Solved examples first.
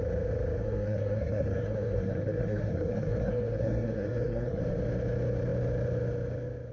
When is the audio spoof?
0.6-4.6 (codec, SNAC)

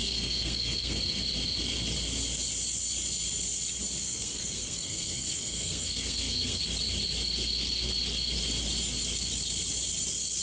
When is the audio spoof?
0.0-1.0 (codec, SNAC); 4.0-6.6

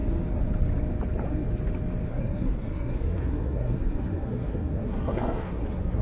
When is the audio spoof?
2.1-6.0 (codec, SNAC)

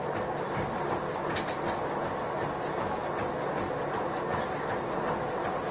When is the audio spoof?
none

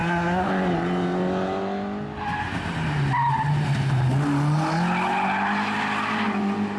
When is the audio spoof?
0.0-0.5 (codec, SNAC)